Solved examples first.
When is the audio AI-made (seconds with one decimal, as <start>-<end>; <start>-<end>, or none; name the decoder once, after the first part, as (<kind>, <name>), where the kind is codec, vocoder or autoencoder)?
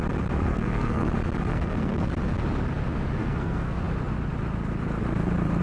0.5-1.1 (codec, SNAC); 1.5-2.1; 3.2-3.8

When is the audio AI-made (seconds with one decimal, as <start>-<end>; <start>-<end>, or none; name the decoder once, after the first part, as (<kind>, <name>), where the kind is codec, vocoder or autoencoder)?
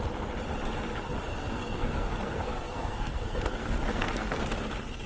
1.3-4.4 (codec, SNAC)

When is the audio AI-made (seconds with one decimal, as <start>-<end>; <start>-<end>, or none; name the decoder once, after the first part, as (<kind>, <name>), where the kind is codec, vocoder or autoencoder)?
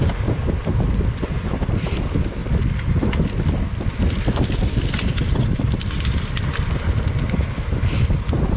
none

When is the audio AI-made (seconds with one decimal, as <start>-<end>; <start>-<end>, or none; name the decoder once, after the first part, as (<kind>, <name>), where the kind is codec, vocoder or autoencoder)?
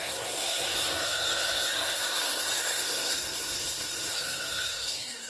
0.0-5.3 (codec, SNAC)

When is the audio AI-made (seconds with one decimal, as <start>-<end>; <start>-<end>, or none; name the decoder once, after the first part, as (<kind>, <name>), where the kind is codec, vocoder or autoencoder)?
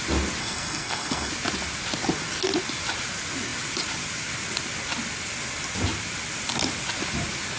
0.4-1.3 (codec, SNAC)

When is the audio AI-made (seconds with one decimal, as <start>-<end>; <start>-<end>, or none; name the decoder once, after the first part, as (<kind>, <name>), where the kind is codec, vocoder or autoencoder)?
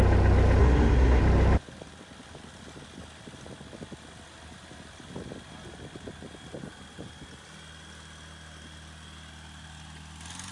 0.6-1.2 (codec, SNAC)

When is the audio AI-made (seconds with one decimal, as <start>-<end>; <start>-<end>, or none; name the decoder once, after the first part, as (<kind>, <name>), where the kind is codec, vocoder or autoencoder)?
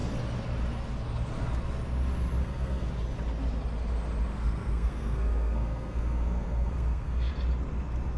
2.4-2.9 (codec, SNAC); 4.3-7.3